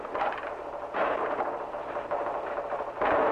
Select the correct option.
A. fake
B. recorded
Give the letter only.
A